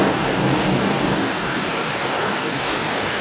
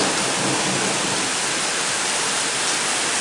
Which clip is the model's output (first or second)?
first